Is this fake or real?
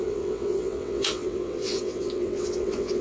fake